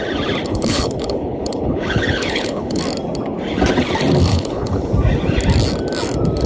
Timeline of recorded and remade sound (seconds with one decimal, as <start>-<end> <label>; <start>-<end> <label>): 0.0-0.5 recorded; 0.5-2.8 remade; 2.8-4.3 recorded; 4.3-4.9 remade; 4.9-6.5 recorded